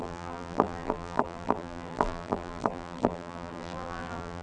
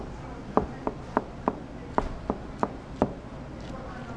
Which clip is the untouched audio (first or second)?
second